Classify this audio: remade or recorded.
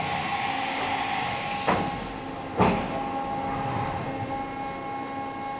recorded